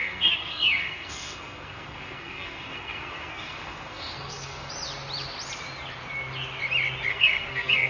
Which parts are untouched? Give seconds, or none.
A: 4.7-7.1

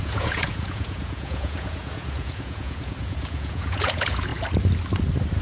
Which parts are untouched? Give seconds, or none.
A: 4.3-5.4